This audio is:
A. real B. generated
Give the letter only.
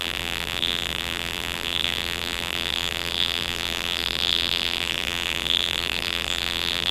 B